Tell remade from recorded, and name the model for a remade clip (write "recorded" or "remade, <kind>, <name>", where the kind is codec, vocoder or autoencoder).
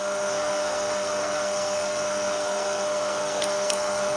remade, codec, SNAC